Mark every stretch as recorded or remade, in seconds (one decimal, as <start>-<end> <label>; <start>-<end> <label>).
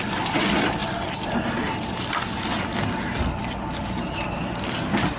0.0-5.2 recorded